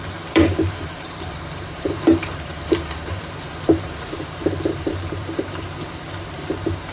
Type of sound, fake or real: fake